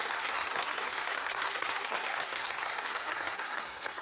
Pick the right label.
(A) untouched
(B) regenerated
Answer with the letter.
B